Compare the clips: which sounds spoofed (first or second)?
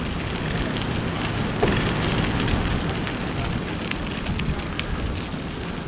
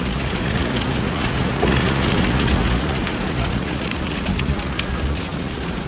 second